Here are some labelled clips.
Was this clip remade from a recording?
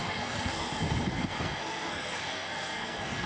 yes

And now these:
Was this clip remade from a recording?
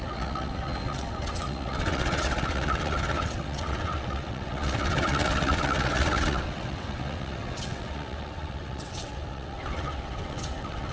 yes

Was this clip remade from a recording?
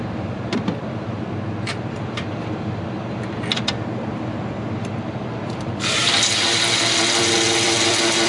yes